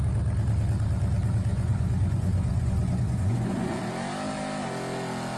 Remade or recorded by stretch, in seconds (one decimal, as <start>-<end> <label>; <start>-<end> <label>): 0.0-1.5 recorded; 1.5-3.8 remade; 3.8-5.4 recorded